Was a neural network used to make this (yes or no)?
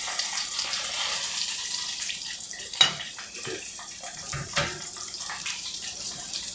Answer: yes